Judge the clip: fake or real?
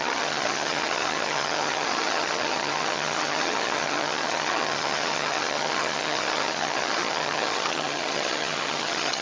fake